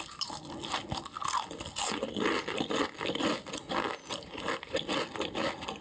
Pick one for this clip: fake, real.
real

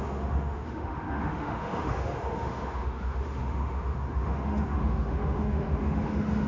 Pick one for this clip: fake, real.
fake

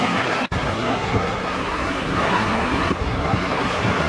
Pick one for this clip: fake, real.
fake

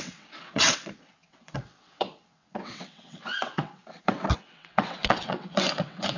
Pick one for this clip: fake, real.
fake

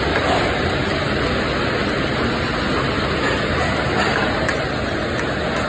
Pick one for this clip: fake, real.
real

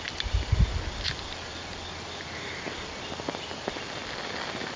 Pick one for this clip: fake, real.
real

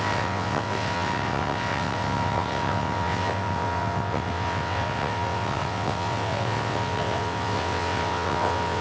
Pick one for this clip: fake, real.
fake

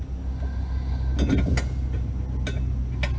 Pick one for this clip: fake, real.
real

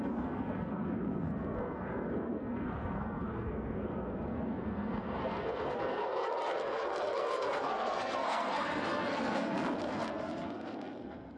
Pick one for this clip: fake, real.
fake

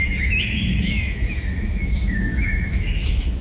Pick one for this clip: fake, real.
fake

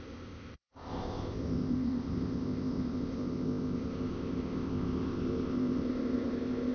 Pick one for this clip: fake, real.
fake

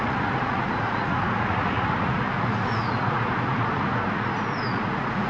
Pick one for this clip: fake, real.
fake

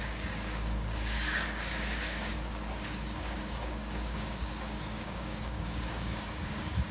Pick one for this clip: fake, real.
fake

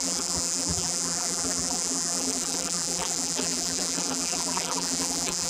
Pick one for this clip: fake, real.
fake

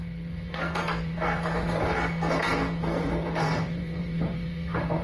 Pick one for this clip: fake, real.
fake